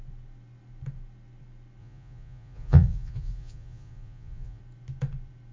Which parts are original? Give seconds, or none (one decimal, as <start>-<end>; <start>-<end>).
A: 0.0-1.8; 4.6-5.5

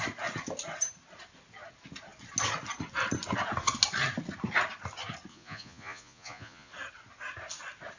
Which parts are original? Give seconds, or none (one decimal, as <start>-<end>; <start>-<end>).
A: 0.0-5.3; 6.7-8.0

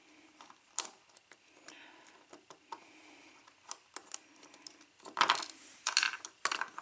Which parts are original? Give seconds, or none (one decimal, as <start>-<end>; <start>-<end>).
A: 0.0-6.8

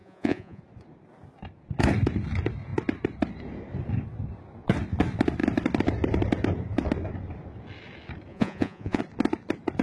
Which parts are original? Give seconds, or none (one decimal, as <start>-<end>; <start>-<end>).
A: 0.6-8.3; 9.0-9.8

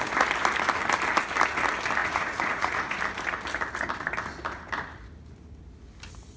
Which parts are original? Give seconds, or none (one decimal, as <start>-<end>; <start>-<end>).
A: 0.0-2.0; 3.0-6.4

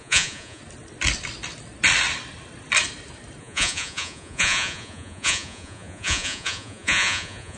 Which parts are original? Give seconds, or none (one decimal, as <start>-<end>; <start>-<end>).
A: 0.6-3.4

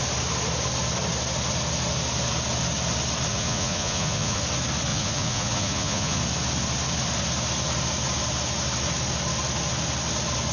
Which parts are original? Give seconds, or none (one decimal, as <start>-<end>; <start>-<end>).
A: 0.0-3.3; 4.4-4.9; 6.2-10.5

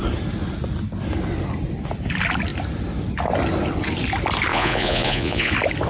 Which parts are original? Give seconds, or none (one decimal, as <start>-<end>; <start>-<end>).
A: 0.0-4.5; 5.5-5.9